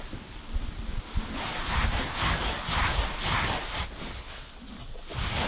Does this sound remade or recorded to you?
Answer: recorded